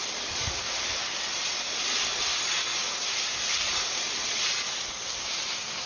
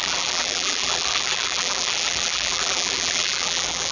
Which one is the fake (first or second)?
second